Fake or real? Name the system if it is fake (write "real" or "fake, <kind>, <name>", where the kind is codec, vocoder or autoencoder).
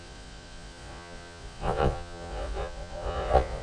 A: fake, vocoder, Vocos